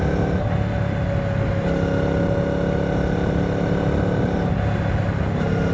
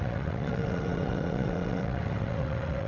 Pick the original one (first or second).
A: first